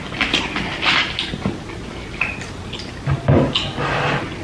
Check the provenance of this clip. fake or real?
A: real